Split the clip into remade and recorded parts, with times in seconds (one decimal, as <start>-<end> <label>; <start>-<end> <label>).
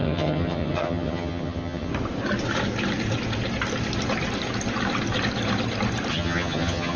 0.0-1.9 remade; 1.9-6.1 recorded; 6.1-7.0 remade